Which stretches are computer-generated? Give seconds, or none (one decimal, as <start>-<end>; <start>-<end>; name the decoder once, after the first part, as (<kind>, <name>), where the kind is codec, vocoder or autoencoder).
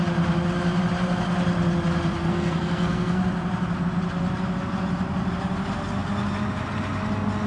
2.2-3.2 (codec, SNAC)